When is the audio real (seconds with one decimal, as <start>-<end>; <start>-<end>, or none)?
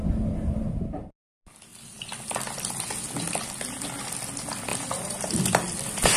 0.0-1.7; 2.7-4.7